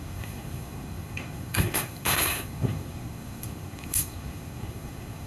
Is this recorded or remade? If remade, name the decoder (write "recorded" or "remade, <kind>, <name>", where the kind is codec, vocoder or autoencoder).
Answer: remade, codec, SNAC